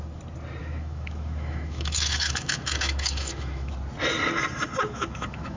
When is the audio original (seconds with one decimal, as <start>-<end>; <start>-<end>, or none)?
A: 0.0-0.6; 3.7-4.8